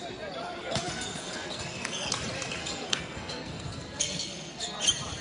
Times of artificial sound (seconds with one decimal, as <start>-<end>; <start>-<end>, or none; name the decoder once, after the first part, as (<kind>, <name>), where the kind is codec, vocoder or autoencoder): 0.6-2.1 (codec, SNAC); 2.6-4.8